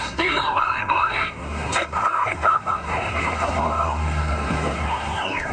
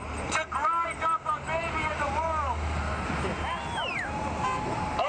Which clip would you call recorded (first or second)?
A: second